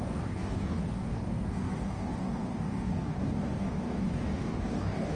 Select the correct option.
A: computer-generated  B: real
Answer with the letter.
A